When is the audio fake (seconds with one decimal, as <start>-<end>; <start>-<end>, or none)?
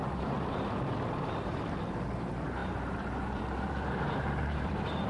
0.0-5.1